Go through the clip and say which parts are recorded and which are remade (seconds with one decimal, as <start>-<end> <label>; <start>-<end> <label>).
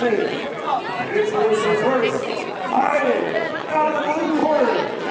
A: 0.0-0.7 remade; 0.7-2.1 recorded; 2.1-5.1 remade